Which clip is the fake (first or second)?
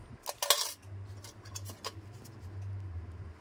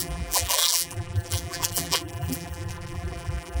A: second